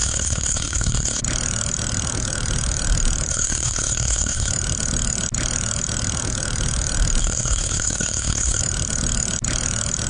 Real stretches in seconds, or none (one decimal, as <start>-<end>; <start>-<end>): 1.2-3.3; 4.5-7.2; 8.6-10.1